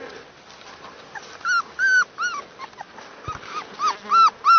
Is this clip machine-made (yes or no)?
no